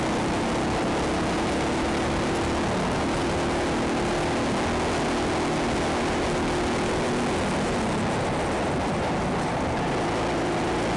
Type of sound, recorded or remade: recorded